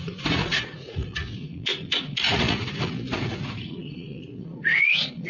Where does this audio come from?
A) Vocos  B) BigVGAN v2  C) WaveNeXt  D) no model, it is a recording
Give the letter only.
A